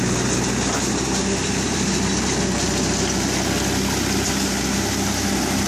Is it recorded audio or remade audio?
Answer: recorded